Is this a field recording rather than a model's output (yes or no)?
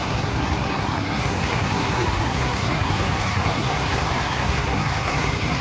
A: no